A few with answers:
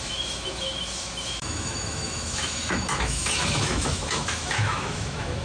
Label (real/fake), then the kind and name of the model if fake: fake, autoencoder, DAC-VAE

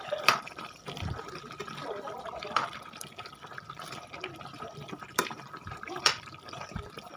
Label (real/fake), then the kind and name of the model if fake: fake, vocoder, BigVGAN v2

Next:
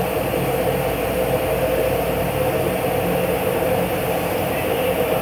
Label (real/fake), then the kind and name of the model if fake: real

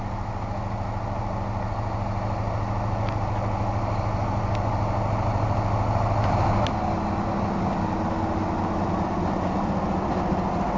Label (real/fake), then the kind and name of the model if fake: real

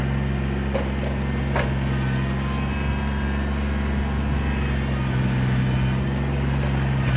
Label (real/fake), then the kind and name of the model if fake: real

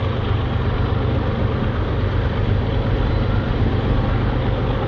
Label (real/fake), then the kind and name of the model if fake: real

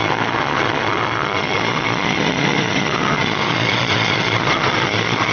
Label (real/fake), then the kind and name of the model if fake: fake, vocoder, Vocos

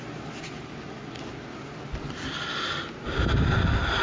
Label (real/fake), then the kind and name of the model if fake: real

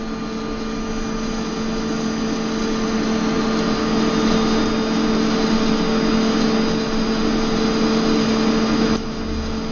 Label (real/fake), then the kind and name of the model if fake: real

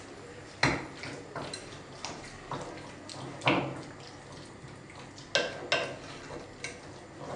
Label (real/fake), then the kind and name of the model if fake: real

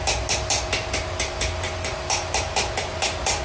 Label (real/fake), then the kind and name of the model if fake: real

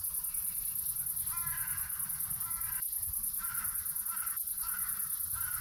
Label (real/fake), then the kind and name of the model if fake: real